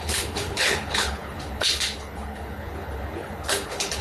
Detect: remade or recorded remade